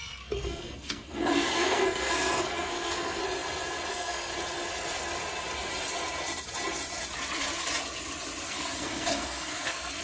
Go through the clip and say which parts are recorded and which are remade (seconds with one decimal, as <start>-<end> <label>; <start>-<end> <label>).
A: 0.0-3.2 remade; 3.2-3.9 recorded; 3.9-4.3 remade; 4.3-8.4 recorded; 8.4-10.0 remade